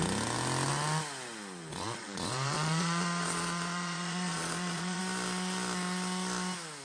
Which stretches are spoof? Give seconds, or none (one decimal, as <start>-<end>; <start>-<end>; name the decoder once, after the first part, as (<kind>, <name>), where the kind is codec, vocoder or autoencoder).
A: 1.6-5.0 (vocoder, Vocos)